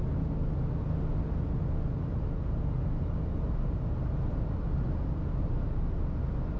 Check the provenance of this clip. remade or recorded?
recorded